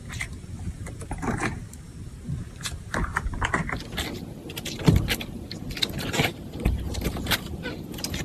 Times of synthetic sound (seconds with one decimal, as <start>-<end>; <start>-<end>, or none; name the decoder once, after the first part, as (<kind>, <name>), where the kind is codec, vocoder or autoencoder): 0.0-3.1 (vocoder, BigVGAN v2); 6.2-8.2